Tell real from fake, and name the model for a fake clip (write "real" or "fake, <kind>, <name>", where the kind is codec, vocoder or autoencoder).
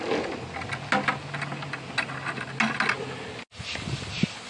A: real